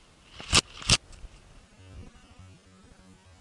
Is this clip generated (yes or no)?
no